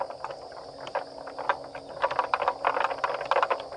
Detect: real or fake real